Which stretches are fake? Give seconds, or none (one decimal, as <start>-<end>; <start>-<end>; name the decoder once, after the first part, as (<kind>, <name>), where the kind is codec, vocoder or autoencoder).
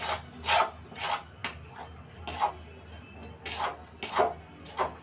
none